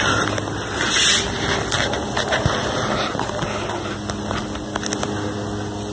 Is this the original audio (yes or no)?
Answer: yes